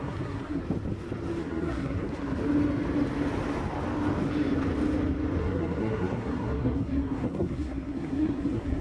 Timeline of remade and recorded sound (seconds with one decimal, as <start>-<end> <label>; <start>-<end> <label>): 0.0-0.6 remade; 0.6-1.4 recorded; 1.4-2.4 remade; 2.4-5.4 recorded; 5.4-8.8 remade

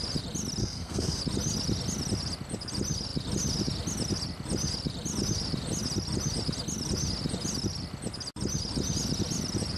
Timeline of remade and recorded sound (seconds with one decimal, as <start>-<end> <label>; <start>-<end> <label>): 0.0-0.6 recorded; 0.6-1.2 remade; 1.2-9.8 recorded

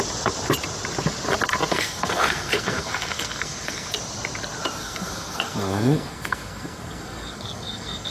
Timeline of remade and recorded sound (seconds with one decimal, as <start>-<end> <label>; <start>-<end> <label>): 0.0-1.7 recorded; 1.7-4.0 remade; 4.0-4.8 recorded; 4.8-8.1 remade

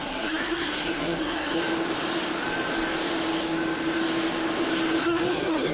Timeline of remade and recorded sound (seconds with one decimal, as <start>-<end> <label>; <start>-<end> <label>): 0.0-1.6 remade; 1.6-5.0 recorded; 5.0-5.7 remade

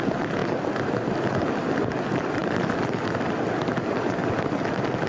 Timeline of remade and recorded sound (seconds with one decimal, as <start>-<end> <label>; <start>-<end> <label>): 0.0-5.1 recorded